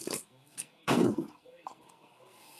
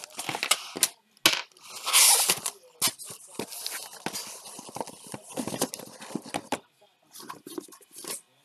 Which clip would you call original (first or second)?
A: second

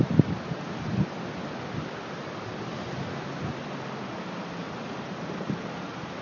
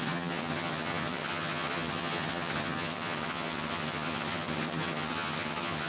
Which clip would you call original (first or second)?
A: first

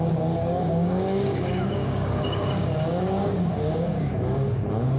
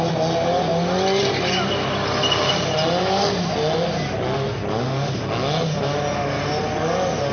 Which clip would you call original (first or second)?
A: second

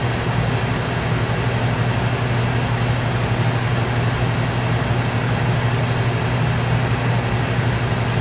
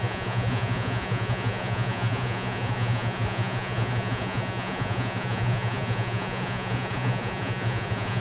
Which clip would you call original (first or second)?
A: first